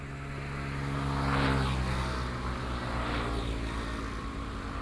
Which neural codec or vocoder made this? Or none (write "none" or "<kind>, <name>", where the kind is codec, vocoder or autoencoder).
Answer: none